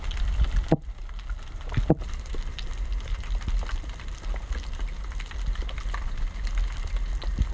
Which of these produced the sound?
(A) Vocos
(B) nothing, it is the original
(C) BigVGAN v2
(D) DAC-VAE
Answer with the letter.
B